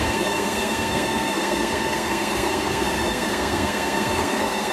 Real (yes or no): no